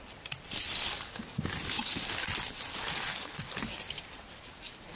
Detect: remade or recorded recorded